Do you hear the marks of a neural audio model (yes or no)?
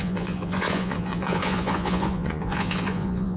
yes